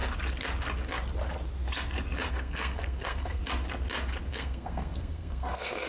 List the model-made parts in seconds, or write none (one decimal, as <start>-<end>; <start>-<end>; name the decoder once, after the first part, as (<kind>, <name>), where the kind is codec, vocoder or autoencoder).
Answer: 2.3-3.4 (codec, SNAC); 4.3-5.9